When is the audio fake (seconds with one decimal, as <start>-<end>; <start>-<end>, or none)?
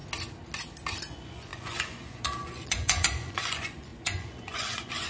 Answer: 1.0-5.1